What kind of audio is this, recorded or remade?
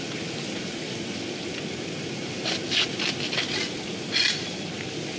recorded